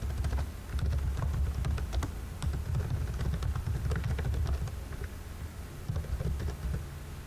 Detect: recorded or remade recorded